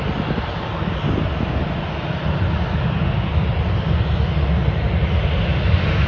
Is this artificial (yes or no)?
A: no